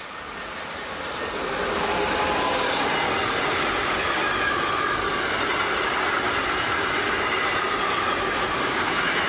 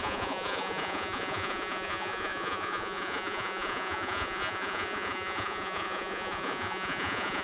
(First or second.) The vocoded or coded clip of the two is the second